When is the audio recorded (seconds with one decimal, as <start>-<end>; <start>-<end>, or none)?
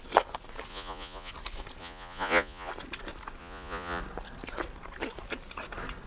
0.0-0.7; 1.3-1.8; 2.7-3.4; 4.0-6.1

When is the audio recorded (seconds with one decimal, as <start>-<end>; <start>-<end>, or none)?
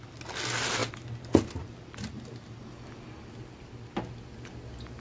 0.0-5.0